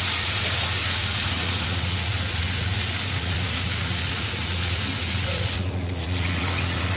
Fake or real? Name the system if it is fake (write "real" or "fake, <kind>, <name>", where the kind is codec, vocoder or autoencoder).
fake, vocoder, Vocos